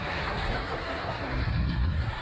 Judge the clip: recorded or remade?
remade